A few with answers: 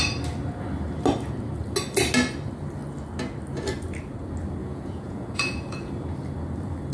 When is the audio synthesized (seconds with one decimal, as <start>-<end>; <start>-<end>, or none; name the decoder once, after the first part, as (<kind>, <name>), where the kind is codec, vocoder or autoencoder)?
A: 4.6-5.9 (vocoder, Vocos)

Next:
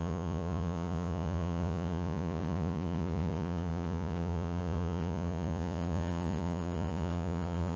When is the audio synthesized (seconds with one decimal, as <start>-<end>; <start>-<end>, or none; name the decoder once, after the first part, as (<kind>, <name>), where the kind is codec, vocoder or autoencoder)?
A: 0.0-7.8 (vocoder, Vocos)

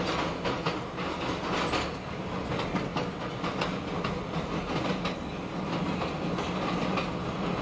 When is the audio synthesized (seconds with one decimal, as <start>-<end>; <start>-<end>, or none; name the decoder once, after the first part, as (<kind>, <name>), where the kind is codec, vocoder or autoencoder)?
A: none